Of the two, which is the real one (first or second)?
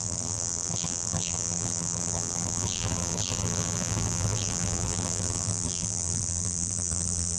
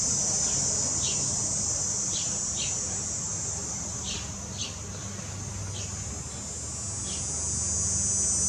second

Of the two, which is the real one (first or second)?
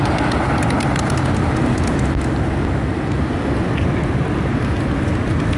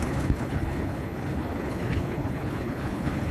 first